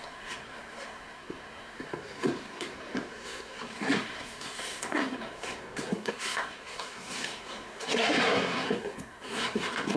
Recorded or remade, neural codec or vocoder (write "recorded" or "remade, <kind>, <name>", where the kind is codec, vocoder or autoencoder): remade, codec, SNAC